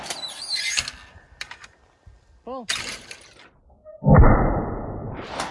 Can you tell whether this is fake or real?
real